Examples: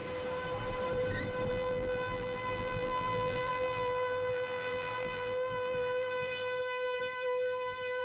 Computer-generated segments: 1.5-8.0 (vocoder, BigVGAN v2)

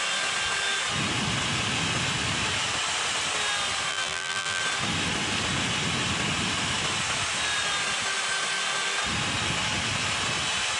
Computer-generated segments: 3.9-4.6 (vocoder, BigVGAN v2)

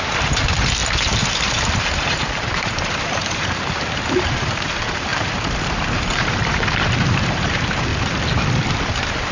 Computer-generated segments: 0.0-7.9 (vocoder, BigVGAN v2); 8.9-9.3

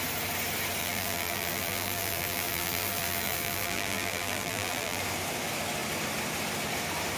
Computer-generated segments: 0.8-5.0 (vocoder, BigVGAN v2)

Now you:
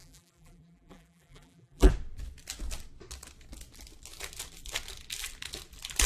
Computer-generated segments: 0.0-1.9 (vocoder, BigVGAN v2)